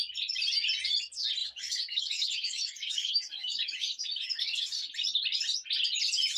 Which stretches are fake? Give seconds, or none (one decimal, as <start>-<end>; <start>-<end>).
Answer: 1.4-4.8